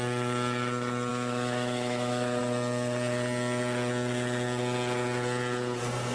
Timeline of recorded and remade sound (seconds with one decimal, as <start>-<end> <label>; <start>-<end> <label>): 0.0-1.1 recorded; 1.1-2.4 remade; 2.4-6.1 recorded